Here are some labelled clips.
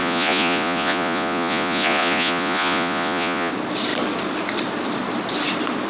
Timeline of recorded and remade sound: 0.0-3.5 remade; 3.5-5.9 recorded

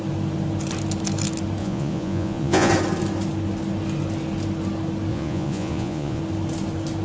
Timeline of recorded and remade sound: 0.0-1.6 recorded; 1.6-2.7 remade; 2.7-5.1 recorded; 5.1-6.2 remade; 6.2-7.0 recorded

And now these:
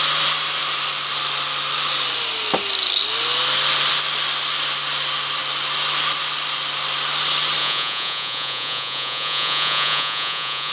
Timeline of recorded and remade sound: 0.0-7.6 recorded; 7.6-10.7 remade

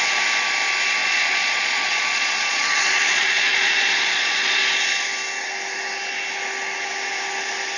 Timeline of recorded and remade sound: 0.0-1.0 recorded; 1.0-4.6 remade; 4.6-7.8 recorded